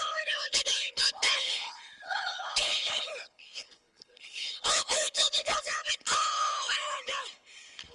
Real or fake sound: fake